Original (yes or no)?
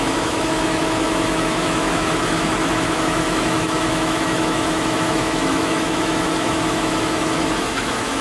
no